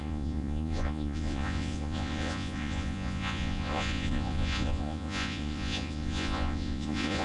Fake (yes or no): yes